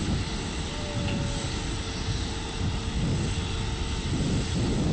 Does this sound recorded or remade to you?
recorded